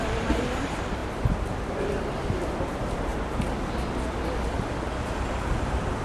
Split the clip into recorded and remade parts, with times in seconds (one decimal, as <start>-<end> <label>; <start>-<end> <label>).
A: 0.0-3.1 remade; 3.1-5.3 recorded; 5.3-6.0 remade